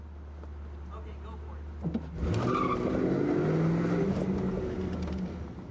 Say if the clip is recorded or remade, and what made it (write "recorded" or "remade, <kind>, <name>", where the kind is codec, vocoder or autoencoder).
recorded